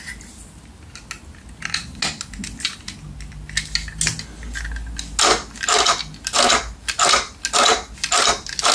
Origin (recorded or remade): recorded